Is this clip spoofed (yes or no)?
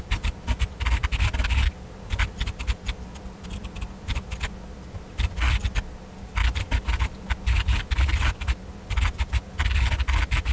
no